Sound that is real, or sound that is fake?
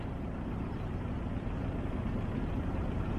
fake